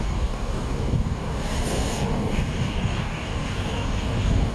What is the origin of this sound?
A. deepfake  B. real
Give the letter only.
A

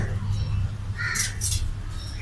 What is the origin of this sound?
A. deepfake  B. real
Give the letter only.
B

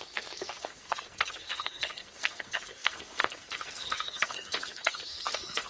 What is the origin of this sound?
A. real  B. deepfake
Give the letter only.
B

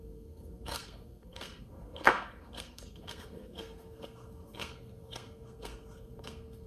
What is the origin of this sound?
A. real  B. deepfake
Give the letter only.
B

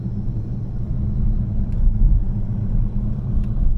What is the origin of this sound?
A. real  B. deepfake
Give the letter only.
A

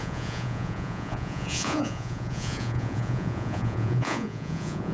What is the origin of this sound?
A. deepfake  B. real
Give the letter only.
A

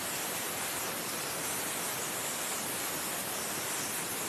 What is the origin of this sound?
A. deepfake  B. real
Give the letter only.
B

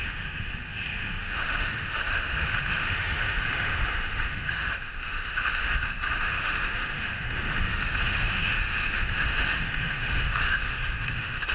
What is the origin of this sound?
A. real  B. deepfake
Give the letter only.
B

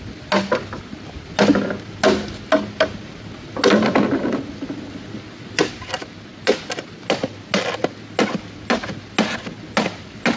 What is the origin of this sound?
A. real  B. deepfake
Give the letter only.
A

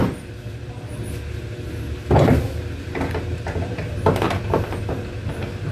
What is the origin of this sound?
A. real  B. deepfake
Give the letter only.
A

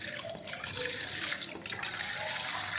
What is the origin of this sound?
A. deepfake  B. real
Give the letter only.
B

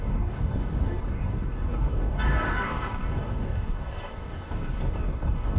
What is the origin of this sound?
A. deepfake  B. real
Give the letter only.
A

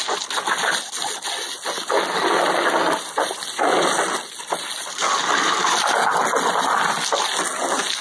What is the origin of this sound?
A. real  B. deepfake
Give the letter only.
A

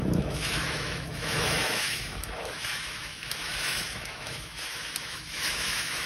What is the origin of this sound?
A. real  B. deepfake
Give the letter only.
B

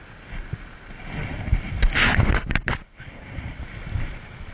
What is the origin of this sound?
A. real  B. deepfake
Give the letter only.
A